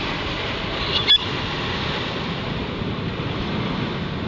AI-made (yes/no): no